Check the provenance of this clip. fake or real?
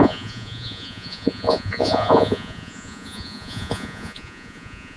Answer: fake